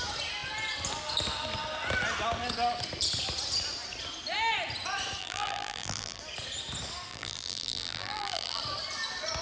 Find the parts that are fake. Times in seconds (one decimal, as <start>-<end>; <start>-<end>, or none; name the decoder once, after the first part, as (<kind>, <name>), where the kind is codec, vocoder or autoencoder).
5.2-6.2 (vocoder, BigVGAN v2); 7.1-8.6